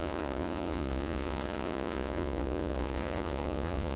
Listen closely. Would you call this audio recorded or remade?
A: remade